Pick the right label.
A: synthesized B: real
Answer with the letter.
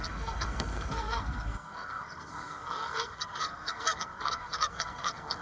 A